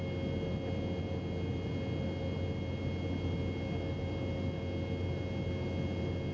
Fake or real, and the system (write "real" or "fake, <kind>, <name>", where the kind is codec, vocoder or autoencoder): real